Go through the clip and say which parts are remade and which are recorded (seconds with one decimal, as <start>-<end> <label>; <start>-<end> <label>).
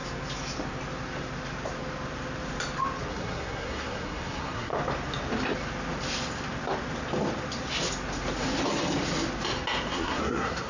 0.0-3.1 recorded; 3.1-4.7 remade; 4.7-9.9 recorded; 9.9-10.7 remade